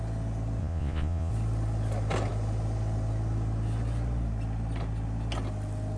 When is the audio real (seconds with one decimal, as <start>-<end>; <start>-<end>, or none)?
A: 0.0-0.6; 1.3-6.0